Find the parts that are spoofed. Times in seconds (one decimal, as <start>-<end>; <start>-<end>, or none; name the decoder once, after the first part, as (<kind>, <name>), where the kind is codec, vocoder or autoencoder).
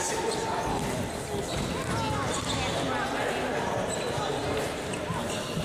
0.0-0.4 (vocoder, BigVGAN v2); 3.8-5.6